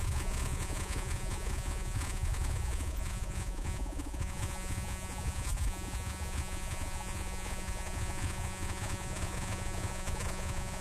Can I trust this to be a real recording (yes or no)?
no